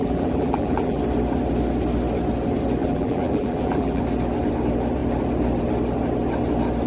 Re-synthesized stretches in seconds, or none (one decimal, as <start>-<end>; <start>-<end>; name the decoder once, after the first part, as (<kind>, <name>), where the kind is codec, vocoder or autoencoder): 0.0-1.0 (vocoder, BigVGAN v2); 2.8-4.0